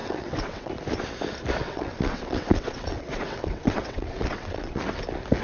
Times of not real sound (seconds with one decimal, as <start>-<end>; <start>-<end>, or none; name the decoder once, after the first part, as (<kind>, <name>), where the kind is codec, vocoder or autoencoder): 0.0-0.7 (vocoder, WaveNeXt); 1.6-4.8